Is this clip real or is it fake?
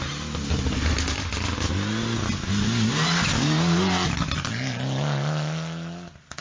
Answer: real